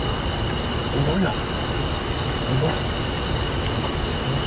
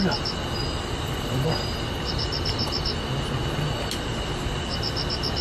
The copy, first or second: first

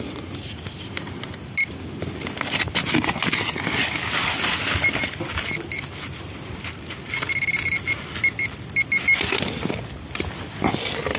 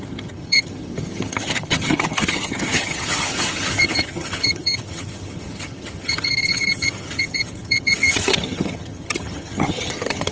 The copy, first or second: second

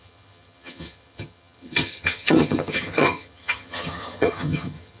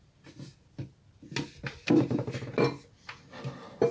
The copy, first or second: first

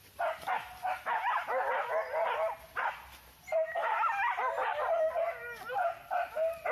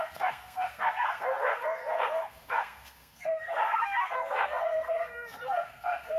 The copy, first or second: second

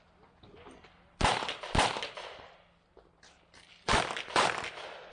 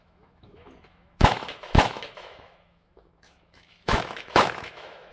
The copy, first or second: second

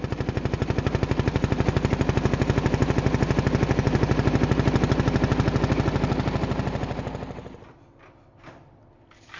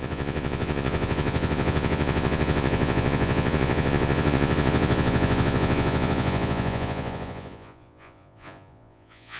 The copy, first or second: second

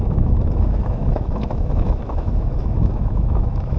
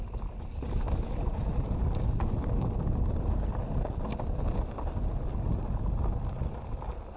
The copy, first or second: first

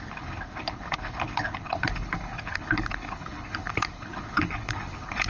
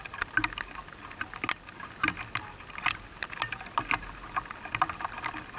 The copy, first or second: first